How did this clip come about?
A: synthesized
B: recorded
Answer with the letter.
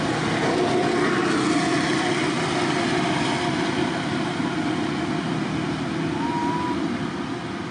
B